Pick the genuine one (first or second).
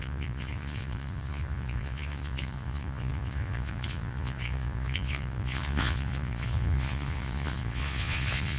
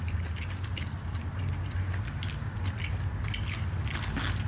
second